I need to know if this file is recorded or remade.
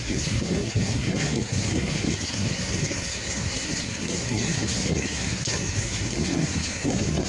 remade